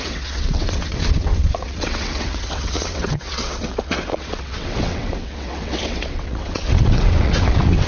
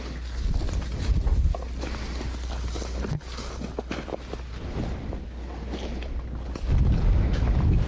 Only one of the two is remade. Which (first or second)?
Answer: first